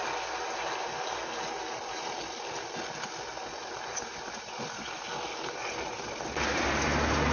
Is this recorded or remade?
recorded